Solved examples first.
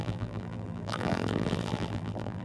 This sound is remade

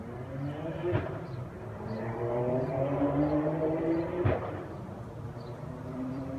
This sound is remade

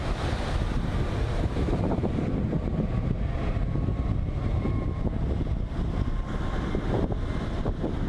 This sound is remade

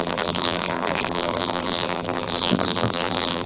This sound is remade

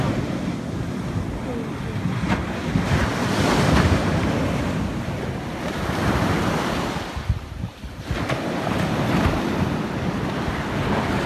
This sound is recorded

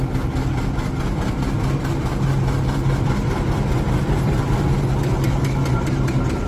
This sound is recorded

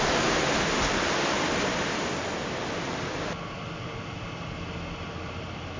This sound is recorded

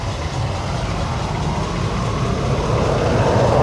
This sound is recorded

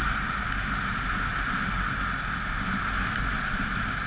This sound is recorded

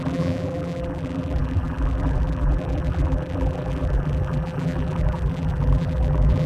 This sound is remade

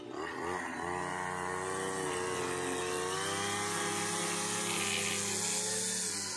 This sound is recorded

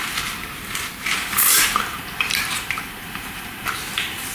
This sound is remade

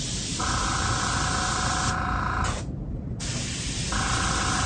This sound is recorded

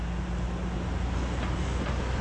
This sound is recorded